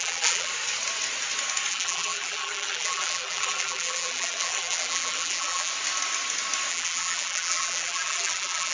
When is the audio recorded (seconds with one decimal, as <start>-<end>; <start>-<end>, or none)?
0.5-1.7; 5.7-6.7